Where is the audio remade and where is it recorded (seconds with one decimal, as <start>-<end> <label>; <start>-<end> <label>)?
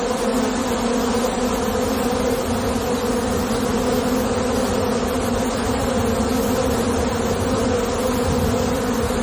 0.0-9.2 recorded